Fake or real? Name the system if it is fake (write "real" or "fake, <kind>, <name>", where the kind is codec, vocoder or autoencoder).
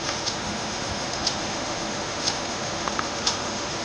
fake, autoencoder, DAC-VAE